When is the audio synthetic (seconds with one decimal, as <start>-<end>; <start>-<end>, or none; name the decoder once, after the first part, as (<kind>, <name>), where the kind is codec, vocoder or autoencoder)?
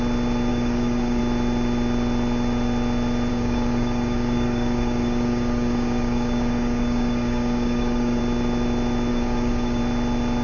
0.5-1.2 (codec, DAC); 3.3-8.2; 9.1-9.8